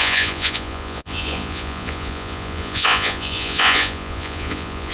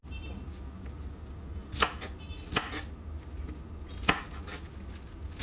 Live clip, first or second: second